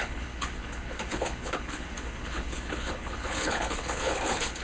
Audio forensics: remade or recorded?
remade